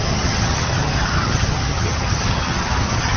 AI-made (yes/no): yes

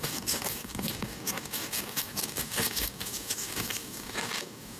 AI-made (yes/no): yes